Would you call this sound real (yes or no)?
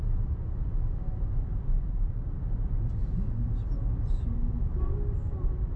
yes